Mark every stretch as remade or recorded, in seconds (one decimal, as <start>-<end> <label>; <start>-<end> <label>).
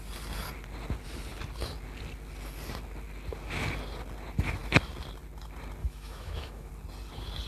0.0-5.8 recorded; 5.8-6.7 remade; 6.7-7.5 recorded